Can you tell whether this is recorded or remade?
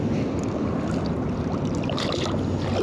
recorded